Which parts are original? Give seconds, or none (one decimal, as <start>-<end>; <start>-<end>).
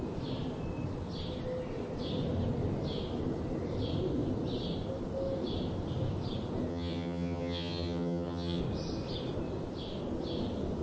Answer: 0.0-6.7; 8.6-10.8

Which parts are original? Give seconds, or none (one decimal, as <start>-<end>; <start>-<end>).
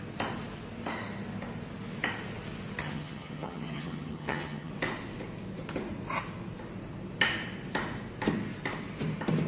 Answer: 0.0-2.8; 4.7-9.5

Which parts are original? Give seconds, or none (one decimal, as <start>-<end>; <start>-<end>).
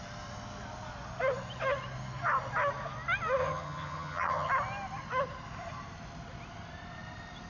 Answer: 0.0-3.4; 4.5-7.5